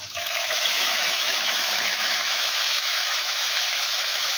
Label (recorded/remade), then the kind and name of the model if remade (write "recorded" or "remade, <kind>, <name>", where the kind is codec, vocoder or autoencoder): remade, autoencoder, DAC-VAE